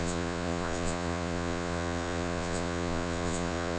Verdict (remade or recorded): remade